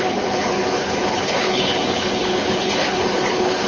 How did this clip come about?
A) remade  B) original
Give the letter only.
A